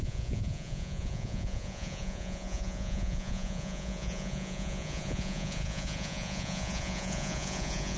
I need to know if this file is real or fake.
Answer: fake